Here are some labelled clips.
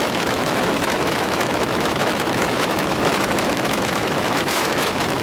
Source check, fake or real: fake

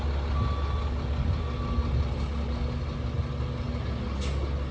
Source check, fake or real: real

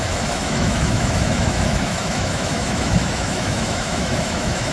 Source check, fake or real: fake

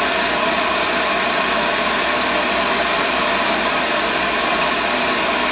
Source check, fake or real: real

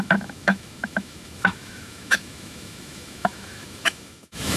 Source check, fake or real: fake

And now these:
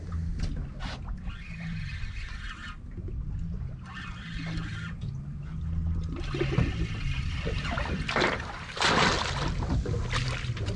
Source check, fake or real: real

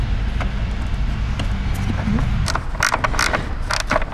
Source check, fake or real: real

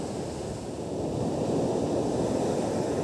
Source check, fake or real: real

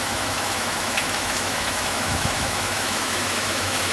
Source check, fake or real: fake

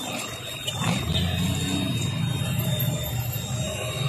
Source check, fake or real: real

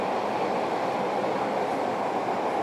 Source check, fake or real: real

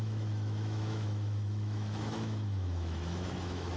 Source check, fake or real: fake